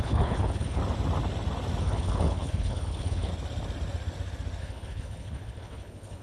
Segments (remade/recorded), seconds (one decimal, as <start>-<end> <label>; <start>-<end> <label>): 0.0-0.8 remade; 0.8-1.8 recorded; 1.8-3.3 remade; 3.3-4.6 recorded; 4.6-6.2 remade